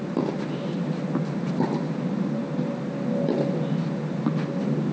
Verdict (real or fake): real